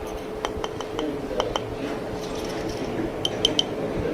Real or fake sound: real